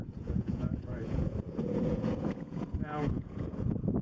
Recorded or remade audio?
remade